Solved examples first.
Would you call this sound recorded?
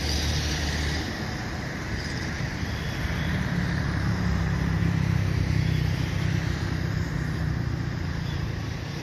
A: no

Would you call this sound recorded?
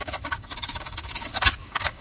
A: no